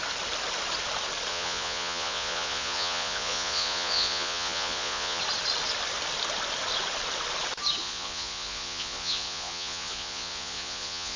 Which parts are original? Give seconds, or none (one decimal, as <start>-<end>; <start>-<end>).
0.0-1.3; 5.2-7.8